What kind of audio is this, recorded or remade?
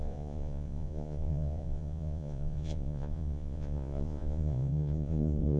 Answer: remade